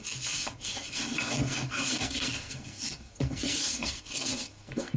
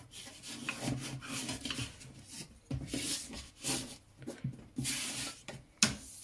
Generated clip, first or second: first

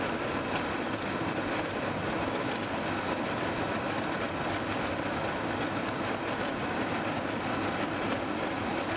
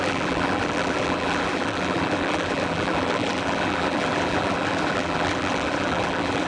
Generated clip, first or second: second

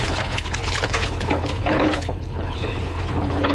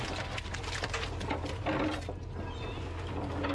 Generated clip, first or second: first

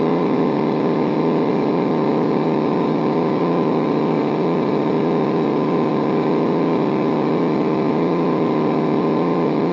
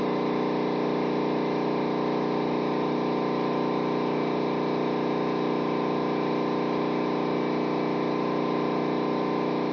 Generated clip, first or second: first